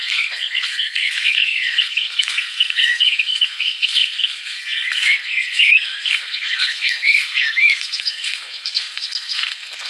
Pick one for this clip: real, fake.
fake